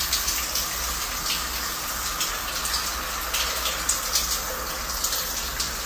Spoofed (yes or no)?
no